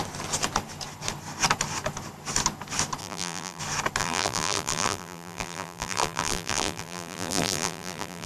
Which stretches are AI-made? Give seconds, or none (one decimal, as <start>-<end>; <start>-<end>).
3.0-3.6; 4.0-8.3